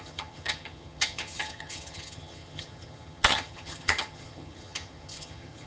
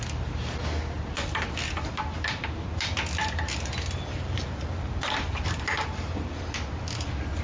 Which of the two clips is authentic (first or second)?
second